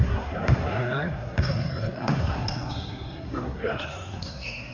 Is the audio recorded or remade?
remade